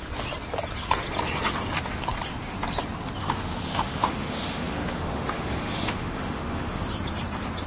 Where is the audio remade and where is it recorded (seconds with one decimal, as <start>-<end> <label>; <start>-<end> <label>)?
0.0-3.2 recorded; 3.2-6.8 remade; 6.8-7.7 recorded